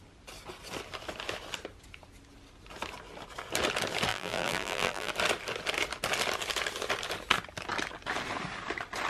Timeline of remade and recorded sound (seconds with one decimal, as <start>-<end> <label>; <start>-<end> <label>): 0.0-4.1 recorded; 4.1-5.1 remade; 5.1-9.1 recorded